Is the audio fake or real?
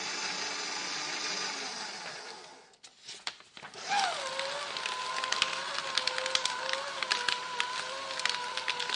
real